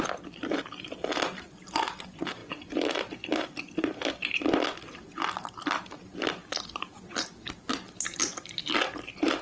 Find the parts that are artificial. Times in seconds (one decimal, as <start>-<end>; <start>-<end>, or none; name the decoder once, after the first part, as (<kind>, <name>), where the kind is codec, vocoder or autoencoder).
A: none